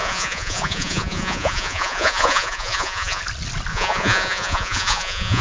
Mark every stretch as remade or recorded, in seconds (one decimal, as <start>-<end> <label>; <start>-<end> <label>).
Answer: 0.0-3.2 remade; 3.2-3.7 recorded; 3.7-5.4 remade